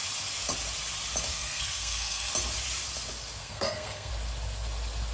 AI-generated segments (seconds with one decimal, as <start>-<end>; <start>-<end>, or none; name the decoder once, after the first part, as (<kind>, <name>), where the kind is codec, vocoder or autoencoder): 1.3-2.3 (codec, SNAC); 3.4-4.1